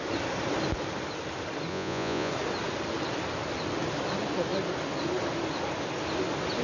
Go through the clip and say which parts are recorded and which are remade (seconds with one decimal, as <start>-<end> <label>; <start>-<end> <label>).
0.0-1.7 recorded; 1.7-2.3 remade; 2.3-6.6 recorded